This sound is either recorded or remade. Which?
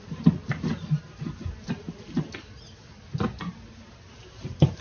recorded